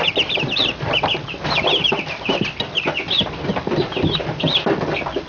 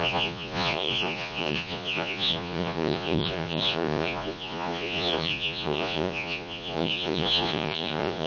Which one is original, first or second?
first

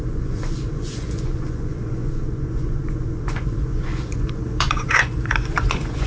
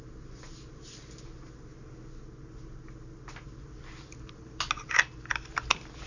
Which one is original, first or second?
second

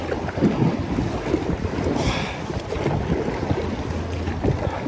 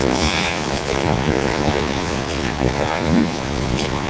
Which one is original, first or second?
first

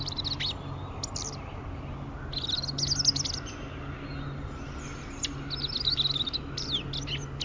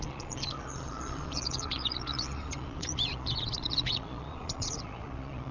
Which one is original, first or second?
first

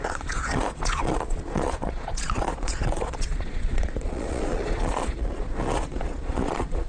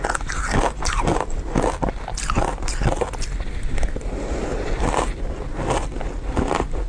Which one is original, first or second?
second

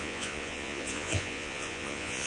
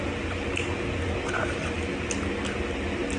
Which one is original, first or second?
second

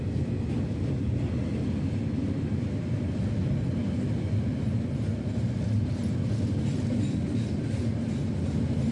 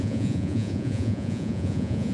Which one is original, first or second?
first